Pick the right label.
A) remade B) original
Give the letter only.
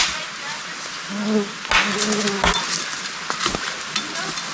B